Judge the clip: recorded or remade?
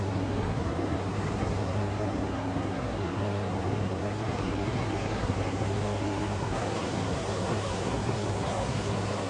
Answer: remade